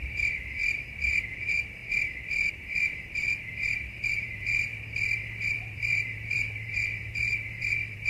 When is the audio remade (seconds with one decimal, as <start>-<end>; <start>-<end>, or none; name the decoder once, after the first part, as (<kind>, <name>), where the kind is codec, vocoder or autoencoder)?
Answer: 0.0-0.6 (vocoder, BigVGAN v2); 1.1-1.8; 2.5-4.7; 5.5-8.1